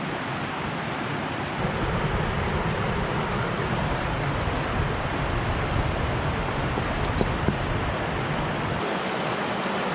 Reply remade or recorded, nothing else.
recorded